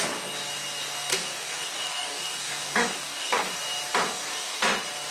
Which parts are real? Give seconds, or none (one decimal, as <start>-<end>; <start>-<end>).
0.0-1.1; 3.6-4.1; 4.6-5.1